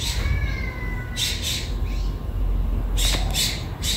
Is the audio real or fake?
real